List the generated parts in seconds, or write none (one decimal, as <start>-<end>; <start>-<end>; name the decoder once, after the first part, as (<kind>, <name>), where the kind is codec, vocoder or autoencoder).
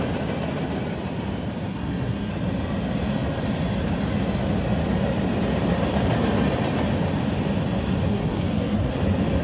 1.7-2.3 (codec, SNAC); 8.1-8.9